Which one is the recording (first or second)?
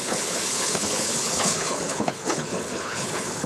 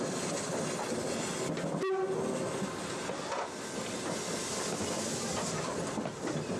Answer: second